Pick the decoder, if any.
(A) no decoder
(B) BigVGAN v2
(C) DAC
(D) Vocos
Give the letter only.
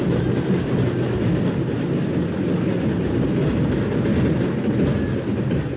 A